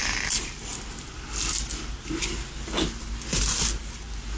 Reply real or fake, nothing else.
real